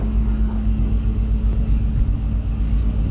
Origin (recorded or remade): remade